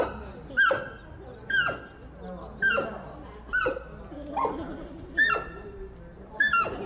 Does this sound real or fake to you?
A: real